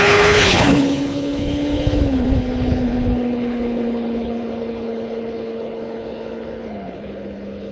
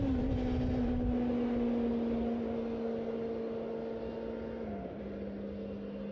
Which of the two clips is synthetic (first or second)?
first